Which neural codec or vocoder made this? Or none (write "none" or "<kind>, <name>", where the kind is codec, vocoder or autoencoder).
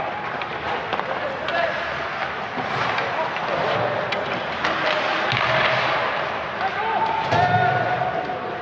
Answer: none